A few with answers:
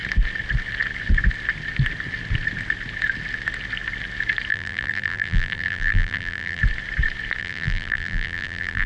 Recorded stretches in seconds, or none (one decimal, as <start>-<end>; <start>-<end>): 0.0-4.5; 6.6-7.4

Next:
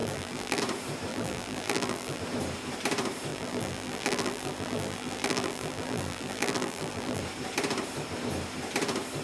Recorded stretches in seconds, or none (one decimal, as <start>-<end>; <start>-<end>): 0.6-1.1; 2.2-3.3; 7.2-9.2

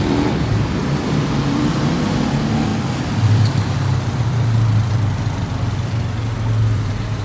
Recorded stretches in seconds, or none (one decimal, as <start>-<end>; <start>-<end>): 0.0-0.8; 1.9-2.7

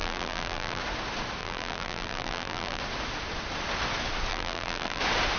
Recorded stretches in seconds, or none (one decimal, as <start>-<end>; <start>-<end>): 0.8-1.4; 2.8-4.3; 5.0-5.4